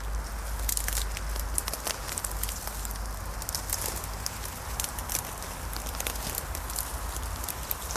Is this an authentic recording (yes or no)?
yes